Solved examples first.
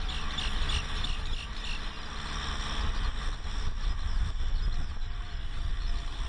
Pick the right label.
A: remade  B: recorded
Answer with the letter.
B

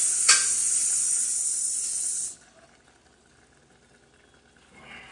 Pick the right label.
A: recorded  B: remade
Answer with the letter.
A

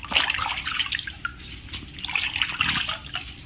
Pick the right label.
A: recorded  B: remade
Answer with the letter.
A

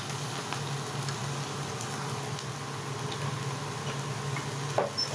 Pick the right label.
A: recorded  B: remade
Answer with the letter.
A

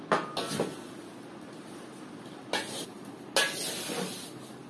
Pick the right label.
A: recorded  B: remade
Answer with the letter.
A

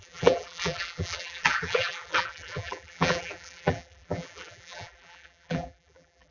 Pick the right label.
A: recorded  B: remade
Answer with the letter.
B